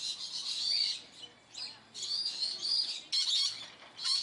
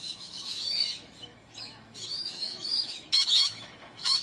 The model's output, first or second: second